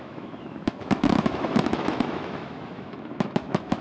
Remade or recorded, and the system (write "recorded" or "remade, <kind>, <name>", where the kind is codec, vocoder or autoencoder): remade, autoencoder, DAC-VAE